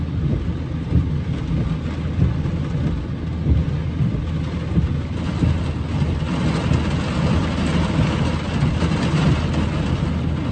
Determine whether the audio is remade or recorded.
recorded